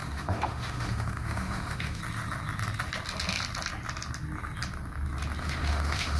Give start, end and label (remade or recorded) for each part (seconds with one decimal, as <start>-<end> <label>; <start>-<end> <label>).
0.0-2.0 remade; 2.0-5.4 recorded; 5.4-6.2 remade